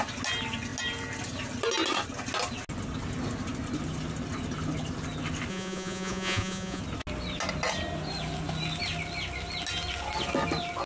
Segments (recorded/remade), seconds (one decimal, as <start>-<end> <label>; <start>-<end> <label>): 0.0-5.5 recorded; 5.5-6.8 remade; 6.8-10.9 recorded